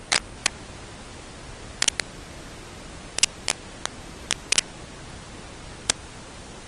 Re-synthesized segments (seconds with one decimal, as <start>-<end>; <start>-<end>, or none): 5.8-6.7